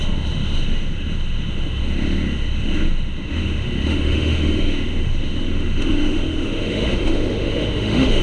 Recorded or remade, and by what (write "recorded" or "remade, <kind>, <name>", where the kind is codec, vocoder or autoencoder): remade, autoencoder, DAC-VAE